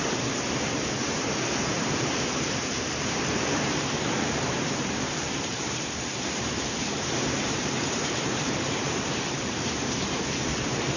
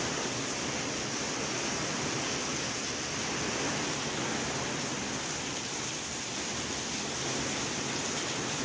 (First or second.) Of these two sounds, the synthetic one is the first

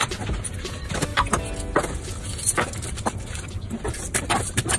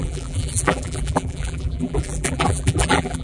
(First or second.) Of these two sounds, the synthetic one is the second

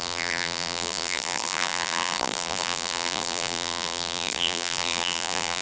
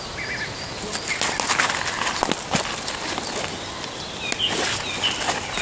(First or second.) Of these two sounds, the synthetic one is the first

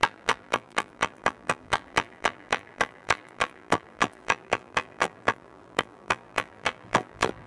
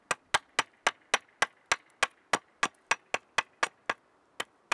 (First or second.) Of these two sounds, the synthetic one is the first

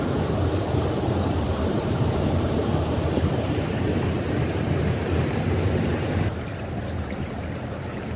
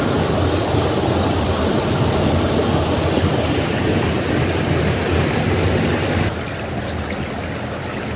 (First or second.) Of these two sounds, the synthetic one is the first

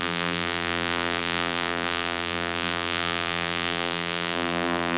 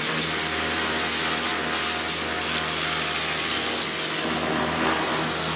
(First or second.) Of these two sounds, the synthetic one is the first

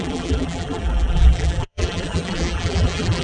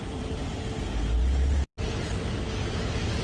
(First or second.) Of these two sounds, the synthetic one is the first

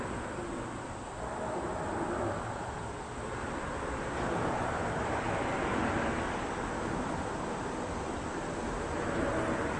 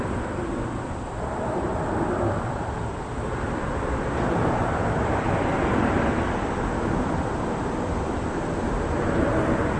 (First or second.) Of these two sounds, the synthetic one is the second